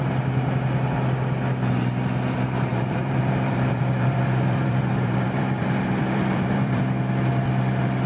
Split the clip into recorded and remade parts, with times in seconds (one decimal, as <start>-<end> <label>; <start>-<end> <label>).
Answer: 0.0-2.7 recorded; 2.7-6.8 remade; 6.8-8.1 recorded